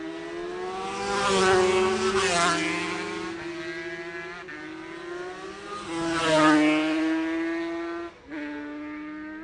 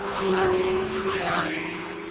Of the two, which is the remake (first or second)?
second